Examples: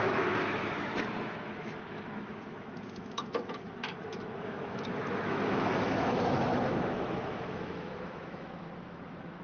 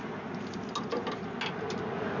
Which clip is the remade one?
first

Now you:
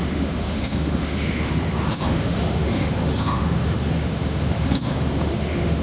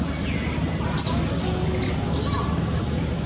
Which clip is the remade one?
first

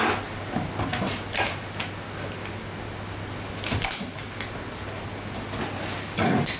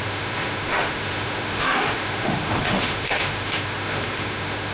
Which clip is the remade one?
second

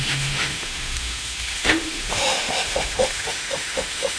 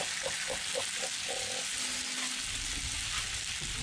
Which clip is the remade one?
first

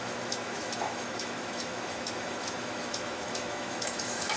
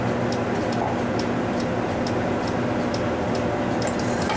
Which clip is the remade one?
first